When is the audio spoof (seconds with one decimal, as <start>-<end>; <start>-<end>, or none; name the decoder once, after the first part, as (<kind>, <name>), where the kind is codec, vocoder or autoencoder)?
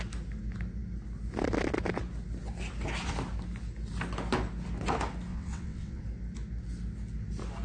5.3-6.0 (vocoder, WaveNeXt)